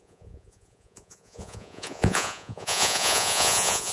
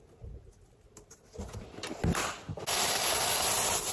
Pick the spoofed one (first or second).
first